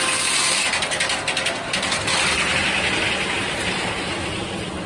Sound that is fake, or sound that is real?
real